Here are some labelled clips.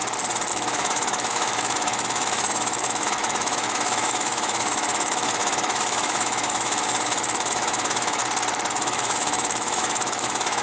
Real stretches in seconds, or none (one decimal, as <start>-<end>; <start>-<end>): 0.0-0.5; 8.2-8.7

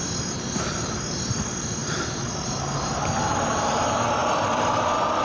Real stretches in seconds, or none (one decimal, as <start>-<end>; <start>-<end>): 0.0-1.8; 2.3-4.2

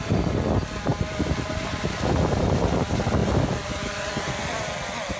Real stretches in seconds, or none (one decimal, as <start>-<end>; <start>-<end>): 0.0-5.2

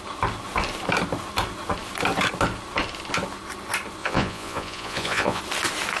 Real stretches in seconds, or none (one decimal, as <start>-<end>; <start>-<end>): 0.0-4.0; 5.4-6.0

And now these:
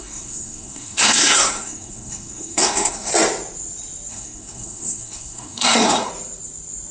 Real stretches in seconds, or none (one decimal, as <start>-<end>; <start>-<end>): 3.1-4.1; 6.1-6.9